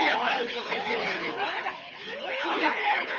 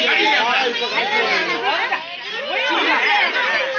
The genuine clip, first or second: second